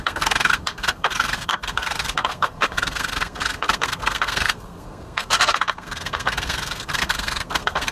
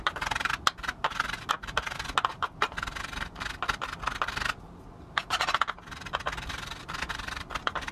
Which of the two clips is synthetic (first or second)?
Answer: first